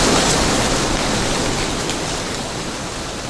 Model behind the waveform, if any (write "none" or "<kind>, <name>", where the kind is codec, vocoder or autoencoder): none